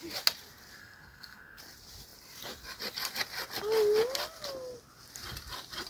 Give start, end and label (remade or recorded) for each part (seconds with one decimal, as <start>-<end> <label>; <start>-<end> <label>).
0.0-0.8 recorded; 0.8-1.6 remade; 1.6-5.9 recorded